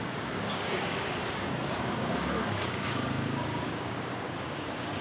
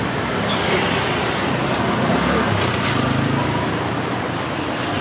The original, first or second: second